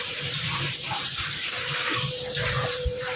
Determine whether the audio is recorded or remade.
remade